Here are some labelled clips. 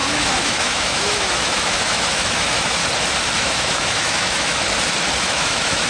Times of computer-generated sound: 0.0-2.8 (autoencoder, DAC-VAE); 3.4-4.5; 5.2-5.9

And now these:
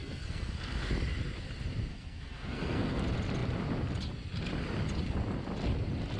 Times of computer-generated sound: 0.0-0.9 (codec, SNAC); 1.9-3.0

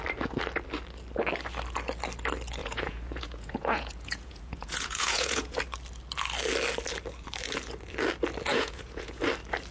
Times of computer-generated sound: 2.6-5.6 (vocoder, Vocos); 8.5-9.2

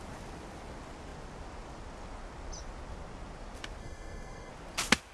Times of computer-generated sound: 3.8-4.5 (codec, SNAC)

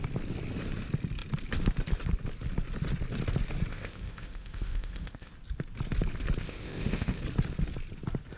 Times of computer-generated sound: 3.7-5.3 (codec, ZipCodec); 6.4-7.2

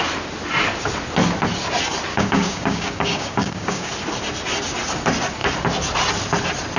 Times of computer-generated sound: 2.1-3.9 (codec, DAC)

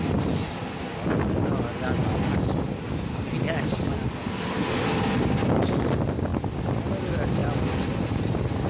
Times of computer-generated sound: none

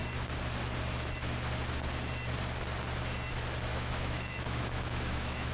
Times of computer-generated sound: 3.7-5.5 (autoencoder, DAC-VAE)